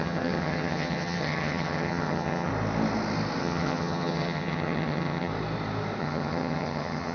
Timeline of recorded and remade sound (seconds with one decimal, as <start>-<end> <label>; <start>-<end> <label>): 0.0-2.5 remade; 2.5-3.4 recorded; 3.4-5.3 remade; 5.3-6.0 recorded; 6.0-7.1 remade